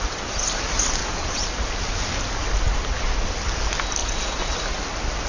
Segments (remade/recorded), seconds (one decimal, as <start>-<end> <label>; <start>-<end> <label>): 0.0-1.0 recorded; 1.0-1.5 remade; 1.5-4.0 recorded; 4.0-4.5 remade; 4.5-5.3 recorded